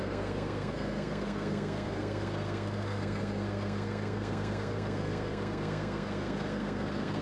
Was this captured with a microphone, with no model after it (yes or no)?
no